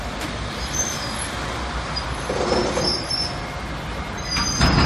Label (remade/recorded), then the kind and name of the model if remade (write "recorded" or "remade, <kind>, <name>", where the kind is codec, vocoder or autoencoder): recorded